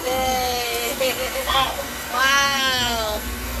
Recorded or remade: remade